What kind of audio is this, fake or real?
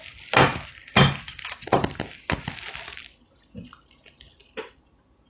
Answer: real